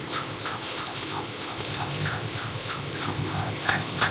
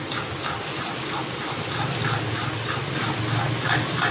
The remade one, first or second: first